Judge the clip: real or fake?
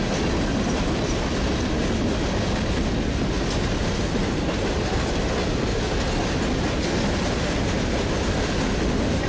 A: real